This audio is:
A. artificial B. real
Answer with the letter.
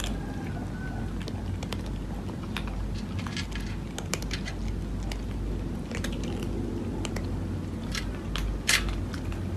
B